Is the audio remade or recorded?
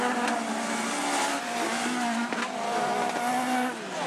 recorded